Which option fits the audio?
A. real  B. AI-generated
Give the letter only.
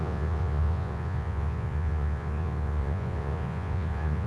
B